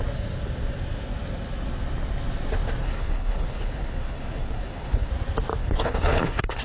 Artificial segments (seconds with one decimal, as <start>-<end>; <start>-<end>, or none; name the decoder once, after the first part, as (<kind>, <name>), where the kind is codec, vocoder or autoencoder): 2.8-5.1 (codec, HILCodec); 5.6-6.6